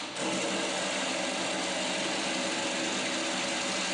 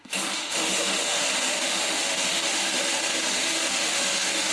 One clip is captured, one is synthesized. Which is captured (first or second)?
first